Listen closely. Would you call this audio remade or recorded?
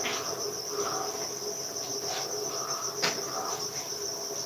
recorded